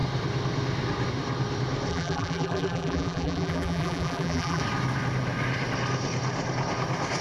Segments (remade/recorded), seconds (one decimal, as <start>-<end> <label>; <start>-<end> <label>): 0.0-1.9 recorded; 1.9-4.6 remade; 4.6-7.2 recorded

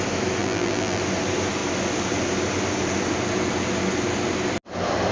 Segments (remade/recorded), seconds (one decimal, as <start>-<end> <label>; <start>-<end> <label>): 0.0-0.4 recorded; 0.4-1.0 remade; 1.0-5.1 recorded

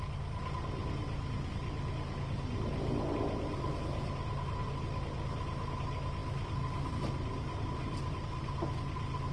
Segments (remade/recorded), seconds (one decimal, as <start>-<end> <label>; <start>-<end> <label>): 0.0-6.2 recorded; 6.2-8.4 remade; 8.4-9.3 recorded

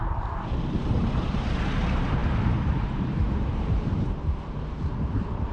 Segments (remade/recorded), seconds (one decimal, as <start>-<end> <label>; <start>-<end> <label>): 0.0-5.5 remade

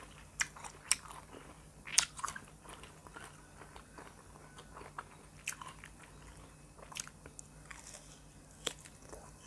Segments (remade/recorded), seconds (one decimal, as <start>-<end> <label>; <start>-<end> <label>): 0.0-3.0 remade; 3.0-3.6 recorded; 3.6-4.4 remade; 4.4-8.7 recorded; 8.7-9.5 remade

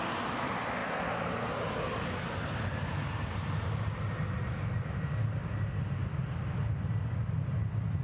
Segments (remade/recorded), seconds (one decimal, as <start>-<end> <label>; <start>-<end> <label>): 0.0-8.0 recorded

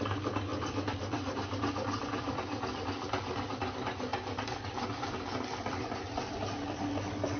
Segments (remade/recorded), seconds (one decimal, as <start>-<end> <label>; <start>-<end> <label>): 0.0-0.5 recorded; 0.5-3.5 remade; 3.5-4.1 recorded; 4.1-6.2 remade; 6.2-7.4 recorded

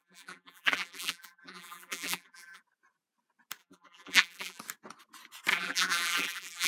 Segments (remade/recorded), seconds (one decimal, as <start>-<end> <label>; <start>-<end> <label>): 0.0-2.6 remade; 2.6-3.6 recorded; 3.6-4.6 remade; 4.6-5.5 recorded; 5.5-6.7 remade